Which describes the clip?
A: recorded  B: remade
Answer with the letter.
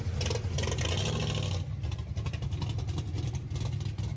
A